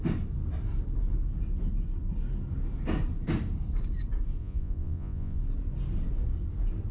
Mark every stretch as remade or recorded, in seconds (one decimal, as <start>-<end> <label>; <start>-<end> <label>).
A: 0.0-4.4 recorded; 4.4-5.4 remade; 5.4-6.9 recorded